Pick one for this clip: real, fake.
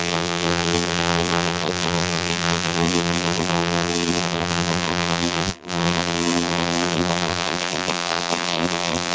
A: fake